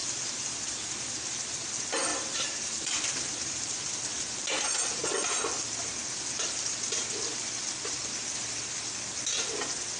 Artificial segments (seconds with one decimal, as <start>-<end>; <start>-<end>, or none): 0.0-1.6; 2.1-3.9